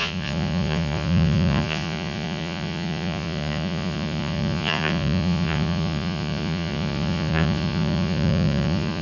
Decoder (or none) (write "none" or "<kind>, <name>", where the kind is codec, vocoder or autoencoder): vocoder, Vocos